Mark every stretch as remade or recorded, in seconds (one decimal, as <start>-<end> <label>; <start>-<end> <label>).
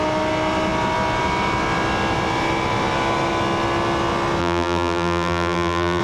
0.0-4.4 recorded; 4.4-6.0 remade